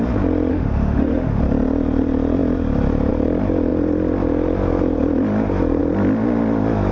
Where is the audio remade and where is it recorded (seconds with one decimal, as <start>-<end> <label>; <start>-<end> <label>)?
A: 0.0-0.5 recorded; 0.5-1.4 remade; 1.4-6.9 recorded

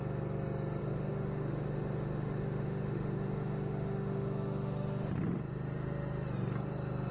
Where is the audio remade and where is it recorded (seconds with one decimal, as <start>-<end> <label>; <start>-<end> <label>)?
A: 0.0-0.8 recorded; 0.8-5.1 remade; 5.1-7.1 recorded

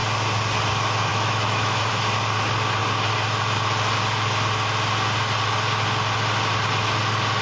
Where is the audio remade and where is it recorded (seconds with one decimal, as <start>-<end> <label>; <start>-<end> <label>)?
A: 0.0-1.1 recorded; 1.1-1.9 remade; 1.9-7.4 recorded

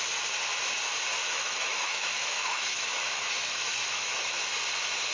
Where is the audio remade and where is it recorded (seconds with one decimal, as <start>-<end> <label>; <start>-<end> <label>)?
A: 0.0-1.2 recorded; 1.2-4.3 remade; 4.3-5.1 recorded

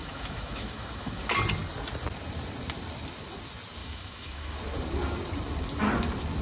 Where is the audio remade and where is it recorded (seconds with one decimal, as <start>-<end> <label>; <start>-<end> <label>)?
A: 0.0-1.2 remade; 1.2-3.8 recorded; 3.8-4.6 remade; 4.6-6.4 recorded

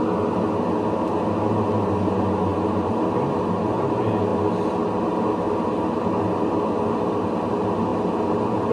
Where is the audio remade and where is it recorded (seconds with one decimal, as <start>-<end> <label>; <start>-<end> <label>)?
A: 0.0-8.7 recorded